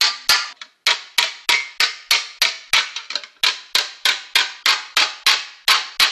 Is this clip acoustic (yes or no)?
yes